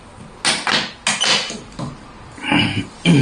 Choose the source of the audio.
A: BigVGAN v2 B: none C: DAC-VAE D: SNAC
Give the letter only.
B